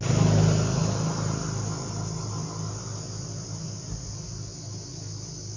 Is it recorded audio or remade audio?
recorded